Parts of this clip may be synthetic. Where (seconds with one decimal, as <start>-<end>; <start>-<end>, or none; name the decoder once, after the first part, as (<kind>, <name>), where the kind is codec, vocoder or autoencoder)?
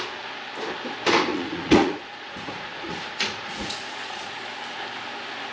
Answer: 1.3-4.4 (vocoder, Vocos)